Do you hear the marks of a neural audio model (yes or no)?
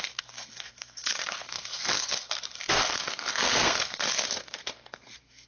yes